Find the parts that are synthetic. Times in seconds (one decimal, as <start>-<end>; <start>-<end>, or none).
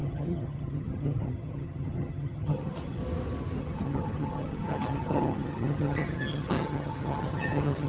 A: 0.0-3.0; 3.6-7.9